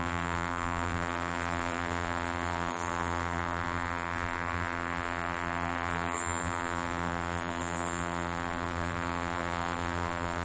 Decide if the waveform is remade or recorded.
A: remade